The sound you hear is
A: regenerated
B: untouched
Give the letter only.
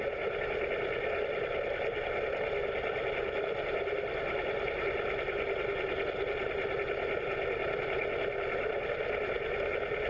B